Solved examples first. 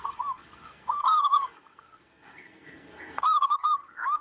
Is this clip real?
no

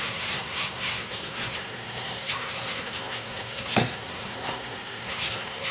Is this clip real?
no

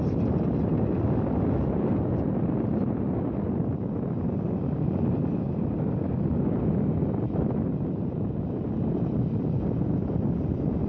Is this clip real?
yes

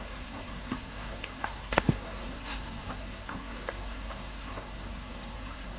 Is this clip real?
no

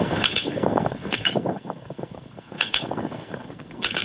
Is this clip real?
no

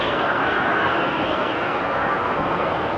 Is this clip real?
no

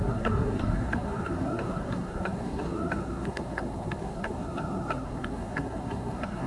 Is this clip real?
no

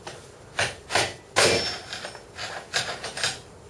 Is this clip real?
yes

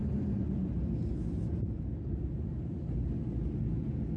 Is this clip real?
yes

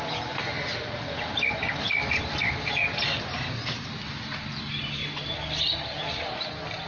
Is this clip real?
yes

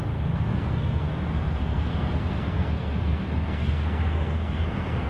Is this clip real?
no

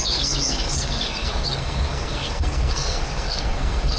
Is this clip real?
no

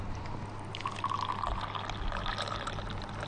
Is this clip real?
yes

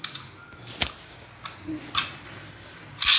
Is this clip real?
yes